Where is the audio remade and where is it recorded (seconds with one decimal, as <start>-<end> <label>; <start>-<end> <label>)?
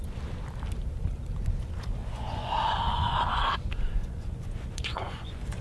0.0-2.0 recorded; 2.0-3.5 remade; 3.5-4.0 recorded; 4.0-5.6 remade